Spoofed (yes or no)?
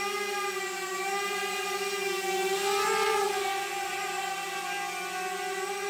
no